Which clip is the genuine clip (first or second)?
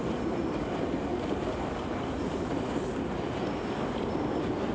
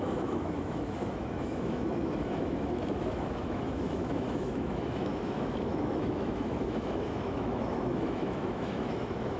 first